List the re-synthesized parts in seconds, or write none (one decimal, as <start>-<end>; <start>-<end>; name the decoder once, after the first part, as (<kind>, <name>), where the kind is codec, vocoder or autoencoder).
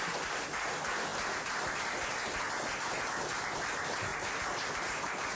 none